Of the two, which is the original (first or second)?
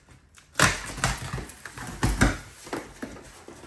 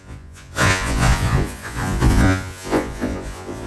first